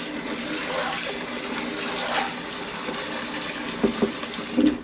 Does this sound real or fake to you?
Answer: real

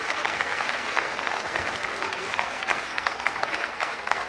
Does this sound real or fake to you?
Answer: fake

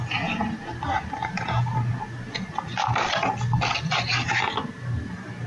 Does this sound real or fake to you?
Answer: real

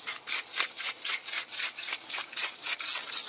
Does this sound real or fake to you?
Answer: real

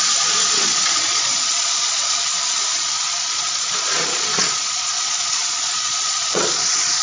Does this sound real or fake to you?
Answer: fake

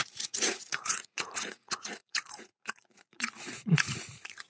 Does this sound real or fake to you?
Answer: fake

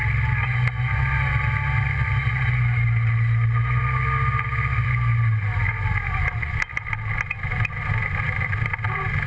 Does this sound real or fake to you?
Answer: real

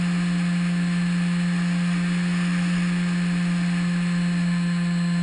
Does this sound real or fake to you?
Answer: real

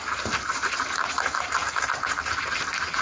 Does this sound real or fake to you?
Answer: real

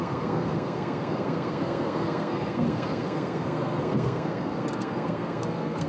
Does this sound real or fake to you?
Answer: fake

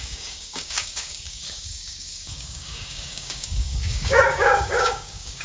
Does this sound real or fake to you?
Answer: fake